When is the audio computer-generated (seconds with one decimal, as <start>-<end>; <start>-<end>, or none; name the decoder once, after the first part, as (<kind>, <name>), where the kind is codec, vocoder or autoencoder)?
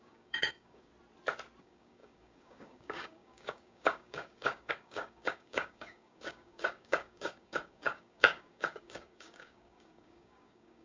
0.0-0.9 (codec, DAC); 1.6-10.8